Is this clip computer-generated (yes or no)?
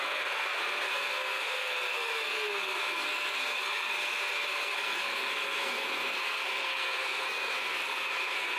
yes